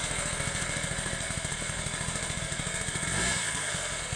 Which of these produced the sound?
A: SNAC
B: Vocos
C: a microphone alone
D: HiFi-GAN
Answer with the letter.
A